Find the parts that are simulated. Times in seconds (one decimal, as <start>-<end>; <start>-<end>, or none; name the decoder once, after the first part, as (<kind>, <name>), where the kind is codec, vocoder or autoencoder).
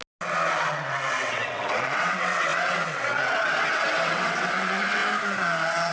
0.5-5.0 (vocoder, WaveNeXt)